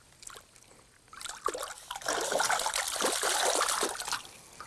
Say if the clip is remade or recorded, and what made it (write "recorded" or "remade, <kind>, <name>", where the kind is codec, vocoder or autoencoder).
recorded